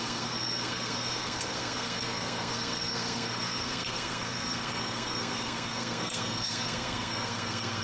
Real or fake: fake